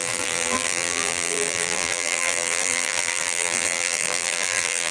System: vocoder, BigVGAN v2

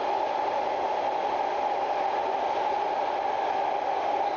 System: none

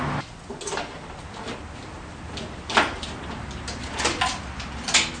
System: none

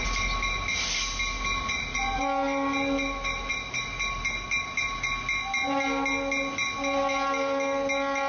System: none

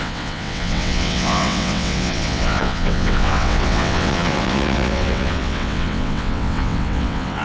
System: vocoder, WaveNeXt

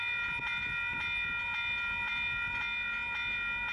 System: none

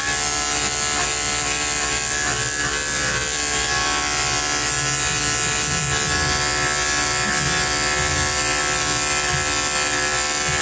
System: none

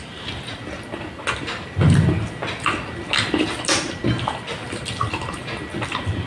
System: none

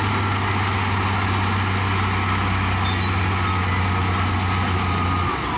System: none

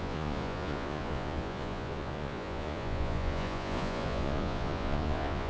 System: vocoder, Vocos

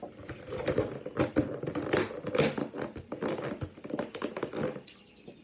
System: none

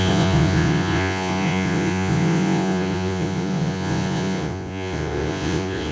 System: vocoder, Vocos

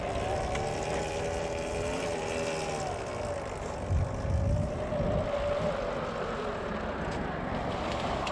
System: none